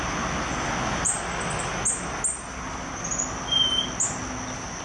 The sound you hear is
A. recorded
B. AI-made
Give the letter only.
A